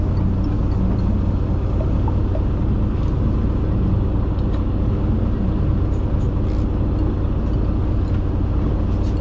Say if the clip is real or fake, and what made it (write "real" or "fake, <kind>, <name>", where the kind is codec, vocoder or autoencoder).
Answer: real